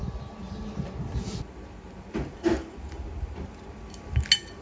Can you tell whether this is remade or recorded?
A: recorded